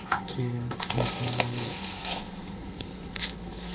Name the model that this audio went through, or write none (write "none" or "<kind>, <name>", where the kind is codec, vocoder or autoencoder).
codec, SNAC